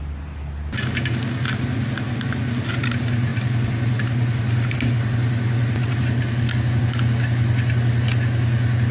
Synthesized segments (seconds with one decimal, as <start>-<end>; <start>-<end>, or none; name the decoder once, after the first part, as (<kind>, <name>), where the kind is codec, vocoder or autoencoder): none